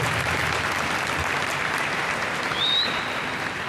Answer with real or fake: fake